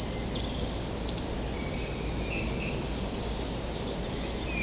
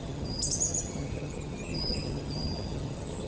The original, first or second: first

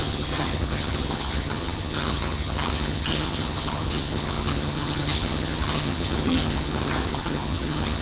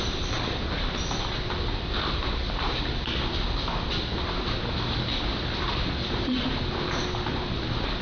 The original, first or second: second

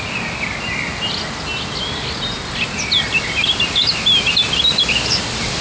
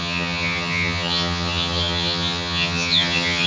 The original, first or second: first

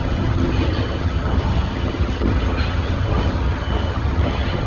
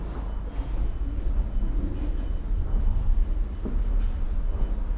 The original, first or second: second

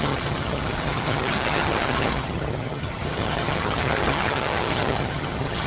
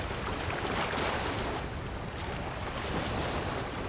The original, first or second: second